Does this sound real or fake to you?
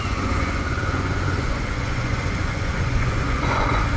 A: fake